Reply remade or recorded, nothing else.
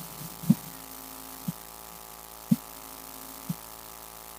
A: remade